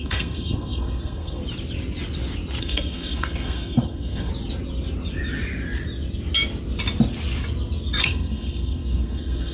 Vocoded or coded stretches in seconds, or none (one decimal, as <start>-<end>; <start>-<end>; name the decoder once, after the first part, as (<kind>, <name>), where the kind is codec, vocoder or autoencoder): 0.0-1.4 (codec, SNAC); 2.6-4.3; 8.0-9.5